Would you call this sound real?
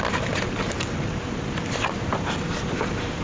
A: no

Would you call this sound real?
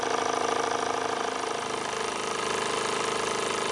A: yes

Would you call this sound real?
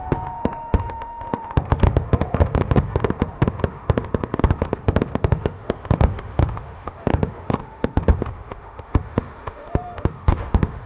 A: no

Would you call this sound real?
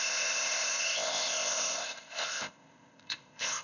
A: no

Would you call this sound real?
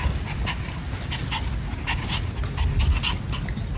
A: yes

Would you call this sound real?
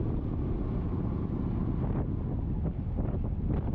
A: yes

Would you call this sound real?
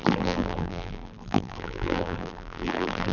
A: no